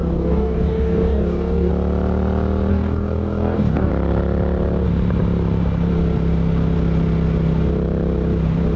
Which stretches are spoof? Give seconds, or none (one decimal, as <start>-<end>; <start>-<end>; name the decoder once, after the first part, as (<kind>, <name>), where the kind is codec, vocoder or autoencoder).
0.0-1.7 (codec, DAC); 2.7-3.9